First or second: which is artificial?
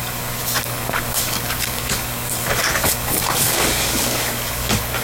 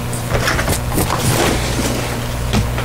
first